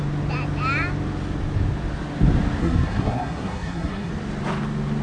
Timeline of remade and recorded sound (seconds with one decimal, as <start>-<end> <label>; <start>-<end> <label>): 0.0-2.6 recorded; 2.6-4.1 remade; 4.1-5.0 recorded